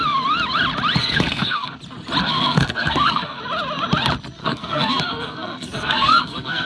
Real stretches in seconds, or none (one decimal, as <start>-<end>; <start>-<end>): 0.0-1.0; 1.8-2.2; 3.4-4.4